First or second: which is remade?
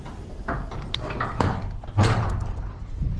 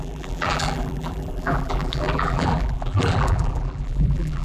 second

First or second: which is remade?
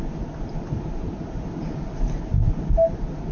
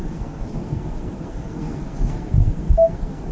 second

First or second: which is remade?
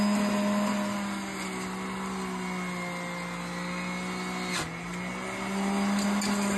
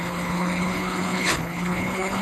second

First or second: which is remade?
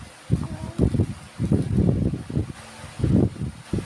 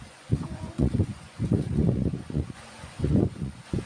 second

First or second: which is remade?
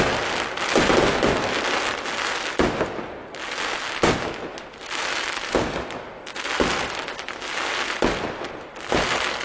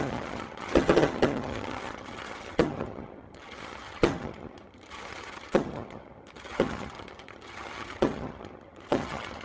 second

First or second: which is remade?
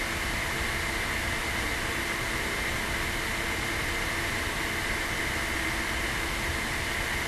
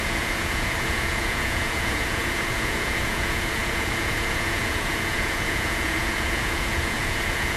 second